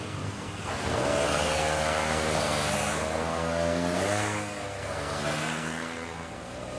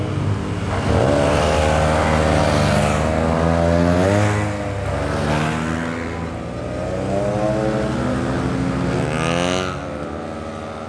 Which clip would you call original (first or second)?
second